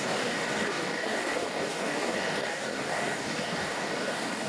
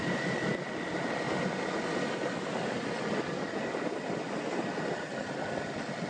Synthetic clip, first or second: first